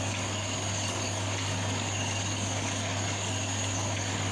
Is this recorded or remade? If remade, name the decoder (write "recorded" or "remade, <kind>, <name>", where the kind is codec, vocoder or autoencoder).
remade, codec, DAC